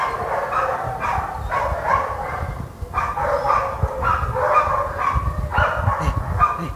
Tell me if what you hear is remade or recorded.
recorded